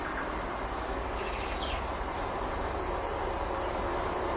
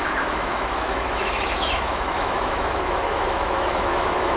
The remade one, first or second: second